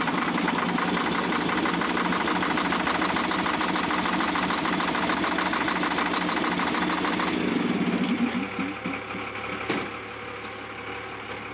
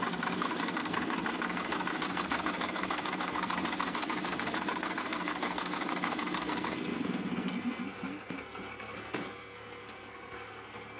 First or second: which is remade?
second